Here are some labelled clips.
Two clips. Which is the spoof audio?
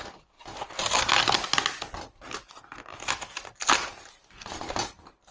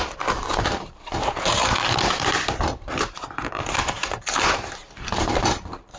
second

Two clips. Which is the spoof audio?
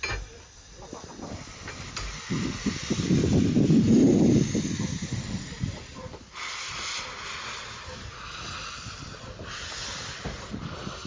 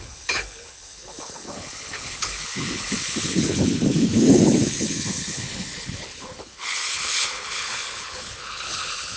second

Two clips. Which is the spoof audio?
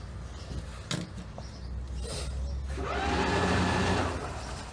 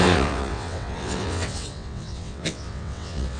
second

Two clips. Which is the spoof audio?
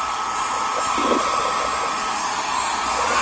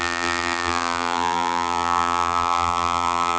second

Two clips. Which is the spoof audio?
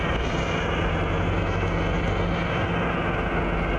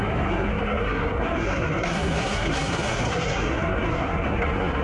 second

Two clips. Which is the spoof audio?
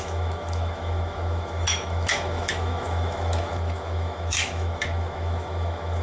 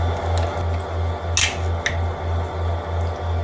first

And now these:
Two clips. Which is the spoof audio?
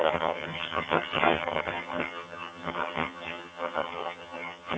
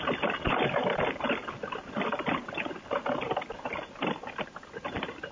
first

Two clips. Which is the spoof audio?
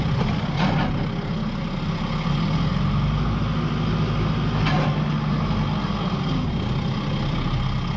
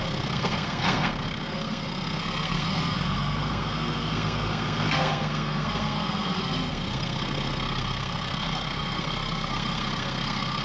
second